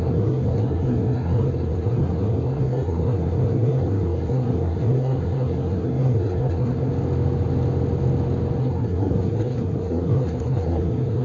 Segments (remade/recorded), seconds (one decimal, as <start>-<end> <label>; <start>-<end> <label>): 0.0-6.9 remade; 6.9-8.6 recorded; 8.6-11.2 remade